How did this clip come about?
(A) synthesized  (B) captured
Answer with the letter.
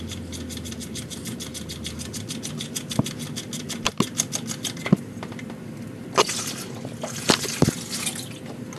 B